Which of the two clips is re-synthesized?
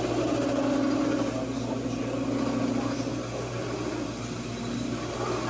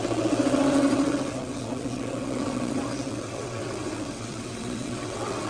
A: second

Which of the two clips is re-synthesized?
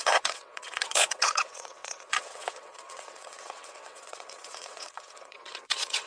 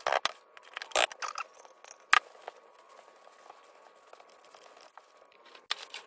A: first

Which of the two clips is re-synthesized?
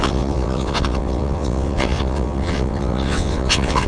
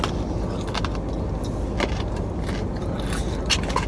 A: first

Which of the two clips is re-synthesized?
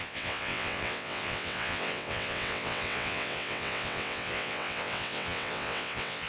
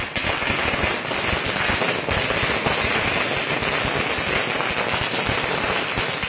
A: first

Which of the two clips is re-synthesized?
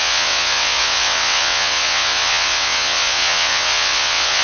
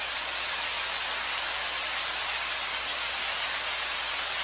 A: first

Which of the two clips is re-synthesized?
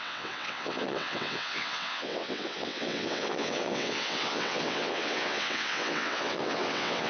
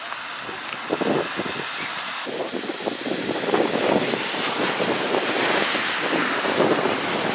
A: first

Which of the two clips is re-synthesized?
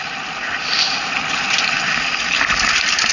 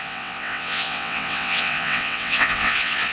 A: second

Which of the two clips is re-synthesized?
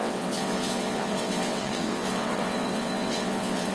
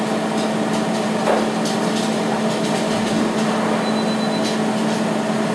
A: first